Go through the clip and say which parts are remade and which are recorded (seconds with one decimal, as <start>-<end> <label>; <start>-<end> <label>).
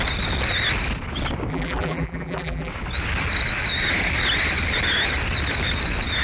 0.0-1.5 recorded; 1.5-2.7 remade; 2.7-6.2 recorded